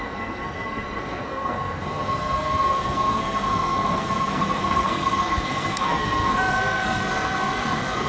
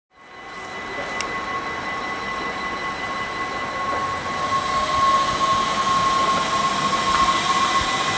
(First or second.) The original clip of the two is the second